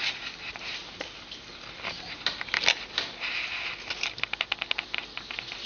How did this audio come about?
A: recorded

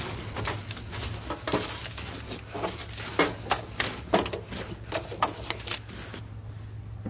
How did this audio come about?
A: recorded